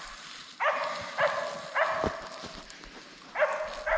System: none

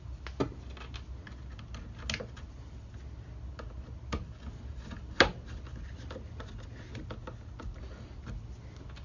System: none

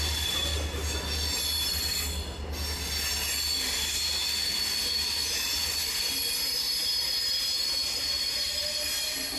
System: none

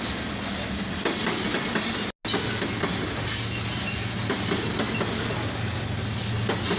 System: none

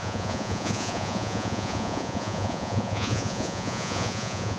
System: vocoder, Vocos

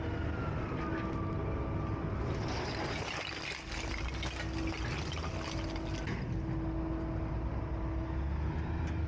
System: none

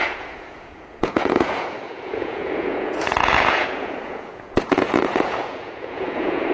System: vocoder, Vocos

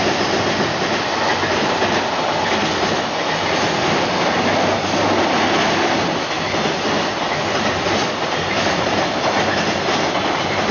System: none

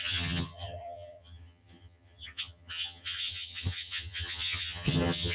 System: vocoder, HiFi-GAN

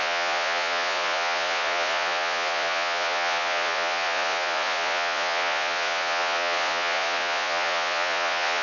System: vocoder, Vocos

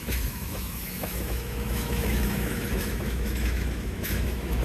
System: autoencoder, DAC-VAE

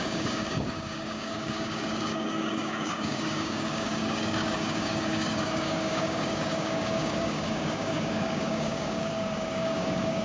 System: codec, DAC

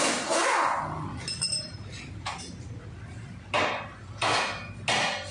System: none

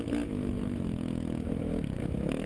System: autoencoder, DAC-VAE